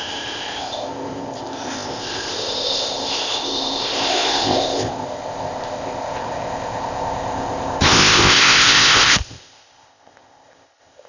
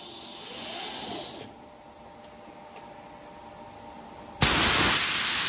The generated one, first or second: first